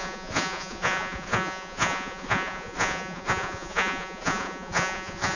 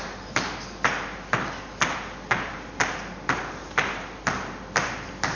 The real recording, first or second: second